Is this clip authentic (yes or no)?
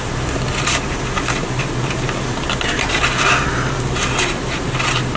yes